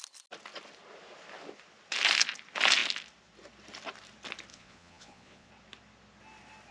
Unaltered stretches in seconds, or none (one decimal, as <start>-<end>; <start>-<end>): 0.0-4.5; 5.5-6.7